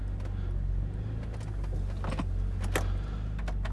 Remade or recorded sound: recorded